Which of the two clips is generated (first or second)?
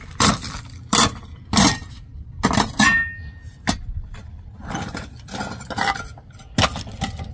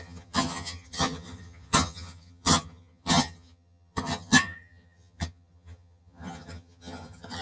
second